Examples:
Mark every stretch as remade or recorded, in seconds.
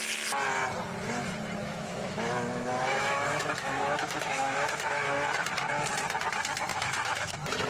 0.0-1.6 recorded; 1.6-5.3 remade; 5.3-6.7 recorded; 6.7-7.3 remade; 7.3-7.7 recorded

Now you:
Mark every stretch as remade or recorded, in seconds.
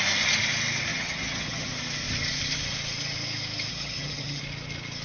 0.0-0.9 recorded; 0.9-1.7 remade; 1.7-3.7 recorded; 3.7-4.4 remade; 4.4-5.0 recorded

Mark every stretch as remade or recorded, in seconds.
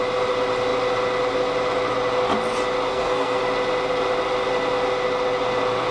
0.0-2.9 recorded; 2.9-3.4 remade; 3.4-5.9 recorded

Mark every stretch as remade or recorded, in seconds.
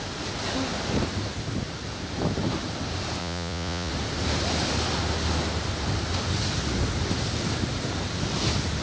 0.0-3.2 recorded; 3.2-3.9 remade; 3.9-8.8 recorded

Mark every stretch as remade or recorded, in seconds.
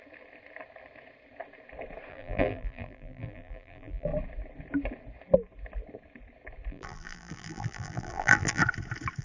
0.0-2.1 recorded; 2.1-4.1 remade; 4.1-6.7 recorded; 6.7-8.6 remade; 8.6-9.2 recorded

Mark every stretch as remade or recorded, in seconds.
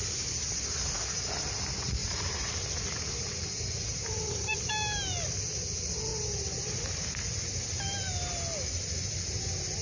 0.0-2.0 recorded; 2.0-3.1 remade; 3.1-3.9 recorded; 3.9-4.7 remade; 4.7-6.1 recorded; 6.1-7.0 remade; 7.0-9.8 recorded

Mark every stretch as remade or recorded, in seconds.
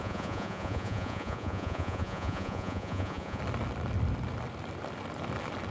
0.0-3.4 remade; 3.4-5.7 recorded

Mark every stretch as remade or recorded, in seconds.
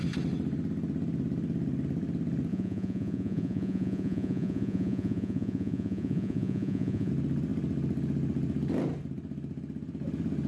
0.0-2.5 recorded; 2.5-7.1 remade; 7.1-10.5 recorded